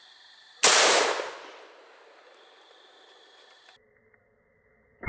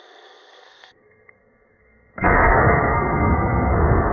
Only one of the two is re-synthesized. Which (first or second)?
second